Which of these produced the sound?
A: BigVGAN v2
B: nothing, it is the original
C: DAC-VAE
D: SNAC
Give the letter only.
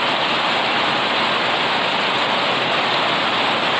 B